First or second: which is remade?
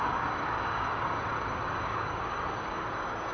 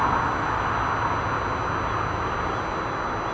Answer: first